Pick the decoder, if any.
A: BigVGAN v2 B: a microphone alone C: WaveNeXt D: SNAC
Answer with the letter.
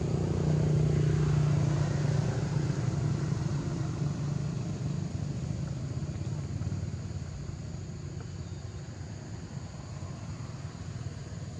B